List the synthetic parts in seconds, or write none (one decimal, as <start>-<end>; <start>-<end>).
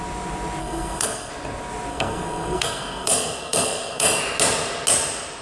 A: 0.6-1.3; 1.9-4.2